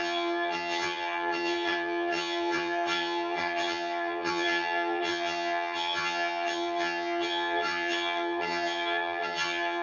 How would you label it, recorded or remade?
remade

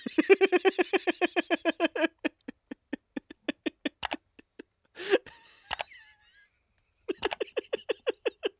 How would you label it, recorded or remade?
recorded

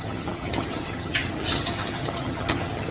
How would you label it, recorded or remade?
remade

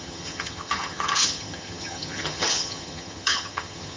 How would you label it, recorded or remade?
remade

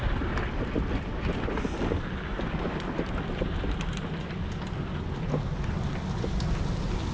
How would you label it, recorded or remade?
recorded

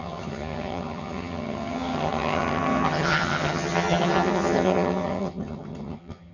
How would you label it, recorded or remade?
remade